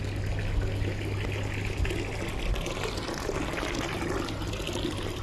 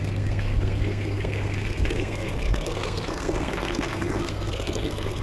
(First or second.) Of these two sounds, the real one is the first